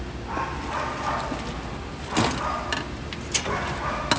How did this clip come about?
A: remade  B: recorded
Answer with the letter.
B